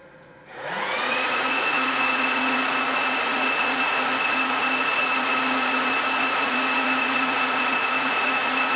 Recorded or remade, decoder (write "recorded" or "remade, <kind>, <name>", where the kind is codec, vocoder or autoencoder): remade, vocoder, Vocos